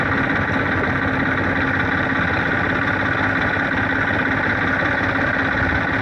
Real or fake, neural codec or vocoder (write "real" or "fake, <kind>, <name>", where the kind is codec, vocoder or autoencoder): real